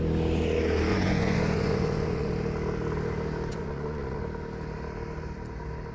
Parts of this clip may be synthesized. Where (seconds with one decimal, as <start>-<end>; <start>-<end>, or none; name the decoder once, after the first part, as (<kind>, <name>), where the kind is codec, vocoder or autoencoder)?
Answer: 0.9-2.3 (vocoder, Vocos); 3.5-4.2